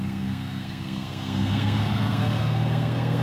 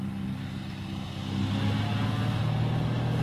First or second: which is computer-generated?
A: first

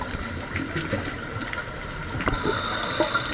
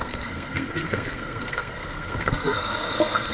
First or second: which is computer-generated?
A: second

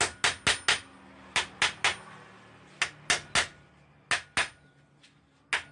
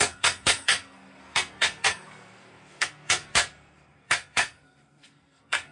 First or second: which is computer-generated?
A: second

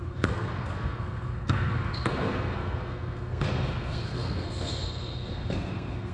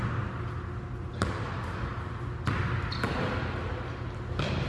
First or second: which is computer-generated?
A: first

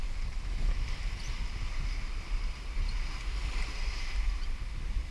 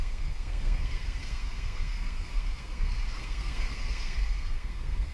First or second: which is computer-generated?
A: second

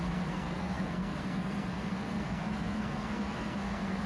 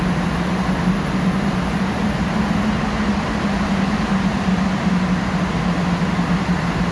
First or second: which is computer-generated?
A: first